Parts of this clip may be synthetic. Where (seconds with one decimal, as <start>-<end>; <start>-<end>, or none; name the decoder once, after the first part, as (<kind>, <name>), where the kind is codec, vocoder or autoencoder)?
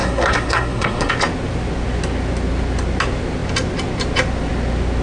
0.0-1.1 (codec, SNAC)